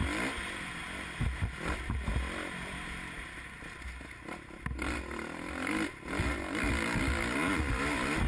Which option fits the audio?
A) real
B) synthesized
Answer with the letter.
A